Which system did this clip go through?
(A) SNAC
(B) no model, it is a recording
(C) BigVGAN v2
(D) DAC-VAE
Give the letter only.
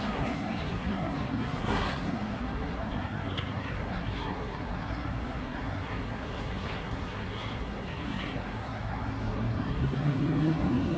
A